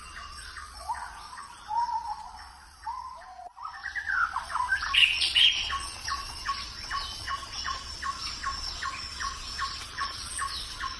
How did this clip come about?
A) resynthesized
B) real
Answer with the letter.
A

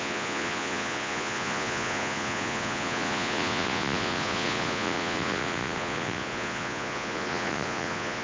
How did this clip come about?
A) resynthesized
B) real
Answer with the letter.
A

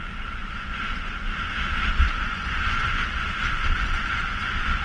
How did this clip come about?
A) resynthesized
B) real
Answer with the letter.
A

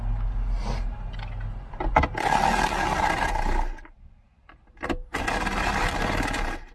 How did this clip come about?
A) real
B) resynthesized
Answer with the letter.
A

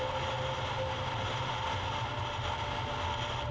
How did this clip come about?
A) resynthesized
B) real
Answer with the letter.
B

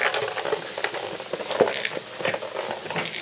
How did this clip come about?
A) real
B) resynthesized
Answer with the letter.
A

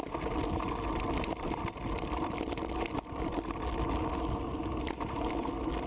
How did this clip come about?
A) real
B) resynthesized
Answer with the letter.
A